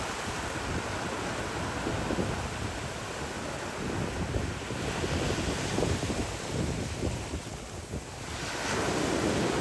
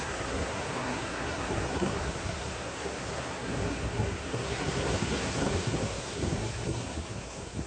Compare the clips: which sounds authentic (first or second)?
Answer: first